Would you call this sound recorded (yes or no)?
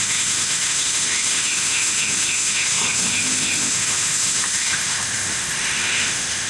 no